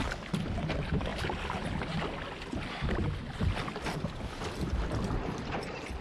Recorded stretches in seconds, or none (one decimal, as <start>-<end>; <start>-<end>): 0.0-6.0